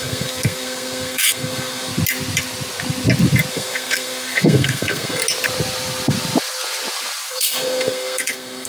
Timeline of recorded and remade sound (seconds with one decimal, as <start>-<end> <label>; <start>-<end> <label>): 0.0-1.9 remade; 1.9-3.5 recorded; 3.5-5.2 remade; 5.2-7.3 recorded; 7.3-8.7 remade